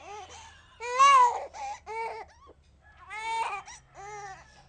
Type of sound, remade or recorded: recorded